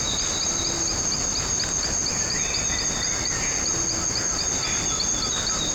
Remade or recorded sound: recorded